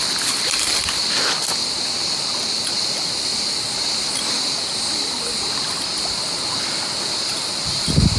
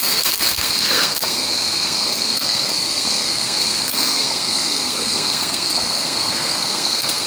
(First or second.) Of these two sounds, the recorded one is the first